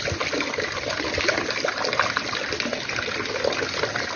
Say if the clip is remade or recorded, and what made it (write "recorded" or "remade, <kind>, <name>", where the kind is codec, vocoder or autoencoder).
recorded